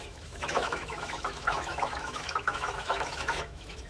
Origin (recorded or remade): remade